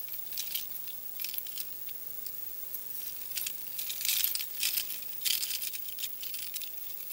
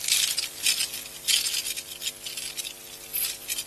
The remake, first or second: first